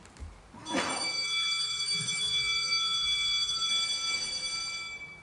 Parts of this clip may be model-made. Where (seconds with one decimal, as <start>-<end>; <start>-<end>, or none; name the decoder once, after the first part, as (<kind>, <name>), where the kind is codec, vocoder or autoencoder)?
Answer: 0.6-3.7 (autoencoder, DAC-VAE)